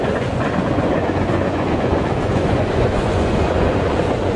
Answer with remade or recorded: remade